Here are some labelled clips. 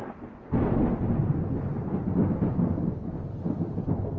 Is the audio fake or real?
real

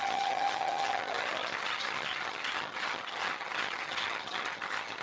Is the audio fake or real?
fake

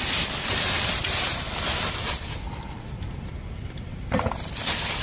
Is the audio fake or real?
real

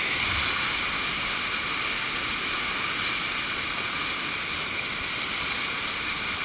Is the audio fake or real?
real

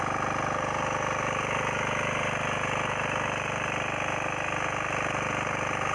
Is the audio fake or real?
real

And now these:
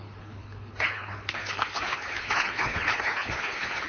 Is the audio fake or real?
fake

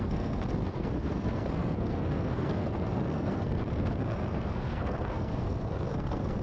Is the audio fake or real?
fake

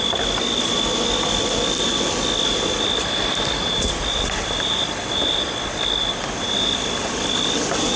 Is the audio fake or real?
real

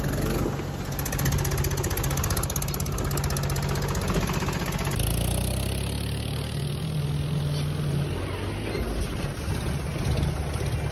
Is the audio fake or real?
real